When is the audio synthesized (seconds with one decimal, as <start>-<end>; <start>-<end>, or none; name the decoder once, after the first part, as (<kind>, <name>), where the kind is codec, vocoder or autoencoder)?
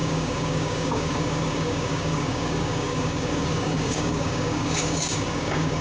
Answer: 0.0-5.8 (codec, DAC)